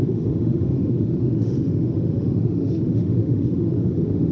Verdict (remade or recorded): remade